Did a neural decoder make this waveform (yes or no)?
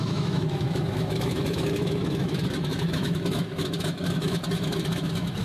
yes